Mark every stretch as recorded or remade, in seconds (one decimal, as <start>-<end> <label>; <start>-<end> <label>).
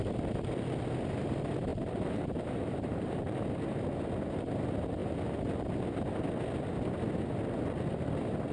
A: 0.0-1.7 recorded; 1.7-3.4 remade; 3.4-8.5 recorded